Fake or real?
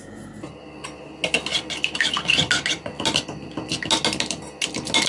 real